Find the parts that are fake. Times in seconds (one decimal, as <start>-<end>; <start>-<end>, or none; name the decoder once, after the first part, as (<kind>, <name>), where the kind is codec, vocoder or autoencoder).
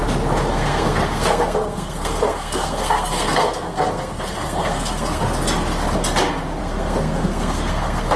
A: 0.5-5.2 (codec, SNAC); 6.6-8.2